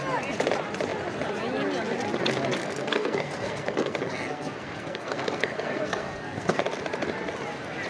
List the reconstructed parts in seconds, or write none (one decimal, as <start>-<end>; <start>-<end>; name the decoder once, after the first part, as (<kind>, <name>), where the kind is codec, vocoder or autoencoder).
2.6-6.6 (codec, SNAC)